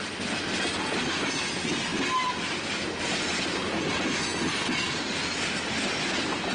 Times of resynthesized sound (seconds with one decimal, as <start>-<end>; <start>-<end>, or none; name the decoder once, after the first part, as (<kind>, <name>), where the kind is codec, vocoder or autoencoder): none